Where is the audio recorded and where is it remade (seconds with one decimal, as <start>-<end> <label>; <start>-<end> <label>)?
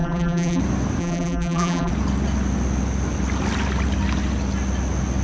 0.0-0.6 remade; 0.6-1.0 recorded; 1.0-1.9 remade; 1.9-5.2 recorded